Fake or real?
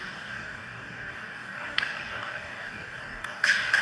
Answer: fake